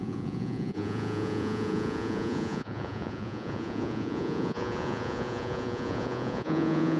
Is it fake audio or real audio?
fake